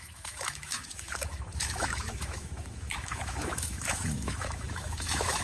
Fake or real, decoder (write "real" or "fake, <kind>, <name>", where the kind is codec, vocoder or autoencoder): fake, autoencoder, DAC-VAE